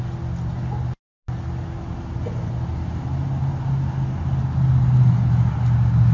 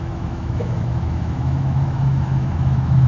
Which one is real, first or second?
first